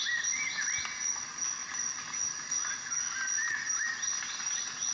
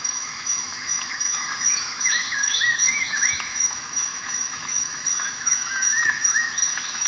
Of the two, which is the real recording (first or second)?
first